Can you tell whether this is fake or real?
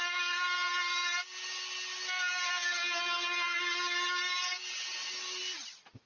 real